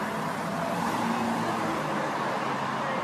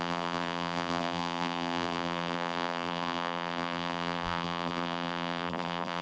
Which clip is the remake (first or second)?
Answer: second